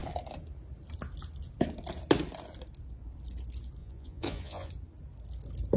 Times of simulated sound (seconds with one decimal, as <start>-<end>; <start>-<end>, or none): 3.8-4.7